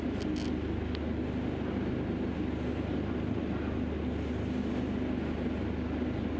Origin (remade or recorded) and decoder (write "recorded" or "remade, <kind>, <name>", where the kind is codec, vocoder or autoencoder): recorded